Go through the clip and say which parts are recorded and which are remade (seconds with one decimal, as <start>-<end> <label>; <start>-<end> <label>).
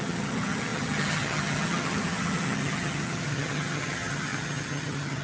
0.0-5.2 remade